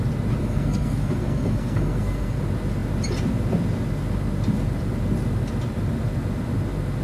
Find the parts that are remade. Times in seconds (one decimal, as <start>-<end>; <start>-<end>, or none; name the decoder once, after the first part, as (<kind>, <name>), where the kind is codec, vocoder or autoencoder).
0.4-2.4 (codec, SNAC)